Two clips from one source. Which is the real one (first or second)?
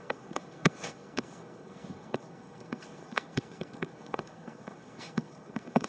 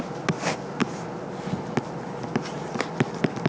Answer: second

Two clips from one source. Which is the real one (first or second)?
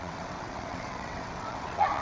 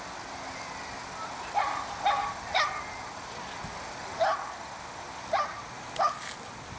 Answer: second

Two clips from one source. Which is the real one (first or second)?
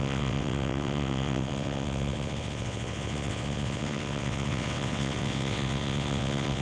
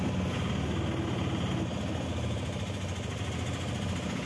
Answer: second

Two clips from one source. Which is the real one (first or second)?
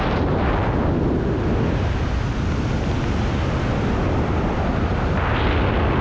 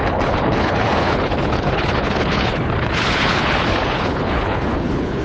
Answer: first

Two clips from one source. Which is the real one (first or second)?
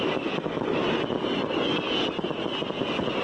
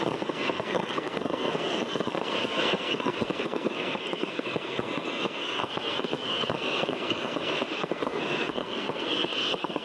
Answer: first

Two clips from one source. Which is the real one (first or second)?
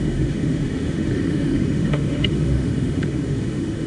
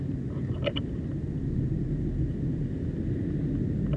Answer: second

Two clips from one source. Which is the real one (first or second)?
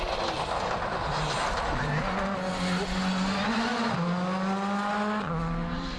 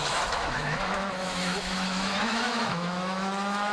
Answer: first